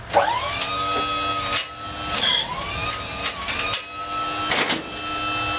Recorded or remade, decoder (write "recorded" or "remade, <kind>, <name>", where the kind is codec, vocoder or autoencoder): recorded